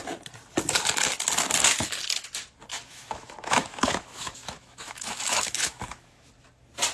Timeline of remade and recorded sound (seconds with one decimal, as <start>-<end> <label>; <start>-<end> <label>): 0.0-2.7 recorded; 2.7-6.3 remade; 6.3-6.9 recorded